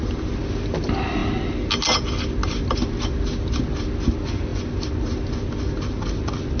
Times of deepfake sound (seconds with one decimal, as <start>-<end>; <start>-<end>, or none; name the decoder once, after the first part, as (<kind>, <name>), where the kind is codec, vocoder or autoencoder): none